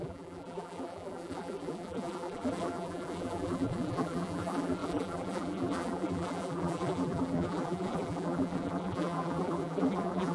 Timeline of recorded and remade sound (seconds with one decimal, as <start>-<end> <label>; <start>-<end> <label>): 0.0-10.3 remade